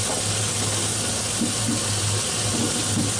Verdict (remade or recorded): recorded